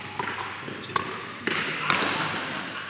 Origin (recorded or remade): recorded